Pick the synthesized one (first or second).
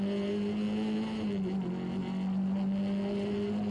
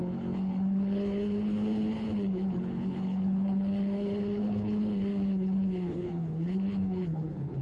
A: second